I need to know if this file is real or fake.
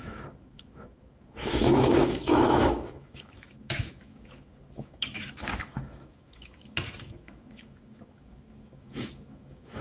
fake